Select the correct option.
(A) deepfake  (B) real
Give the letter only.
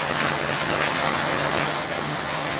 A